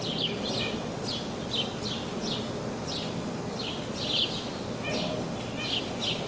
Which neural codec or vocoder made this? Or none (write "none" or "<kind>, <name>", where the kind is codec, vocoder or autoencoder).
none